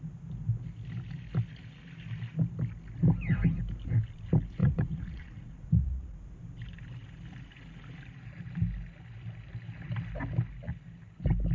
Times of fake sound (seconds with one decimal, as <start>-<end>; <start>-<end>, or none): 4.6-6.2